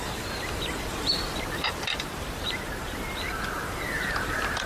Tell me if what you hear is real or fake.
fake